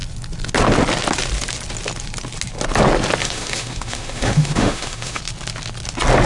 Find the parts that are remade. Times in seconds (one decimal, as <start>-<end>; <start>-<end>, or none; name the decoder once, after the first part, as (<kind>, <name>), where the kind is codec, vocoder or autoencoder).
3.2-5.2 (autoencoder, DAC-VAE)